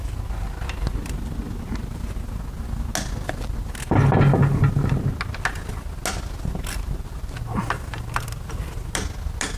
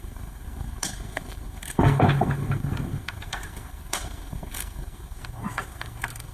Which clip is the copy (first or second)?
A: second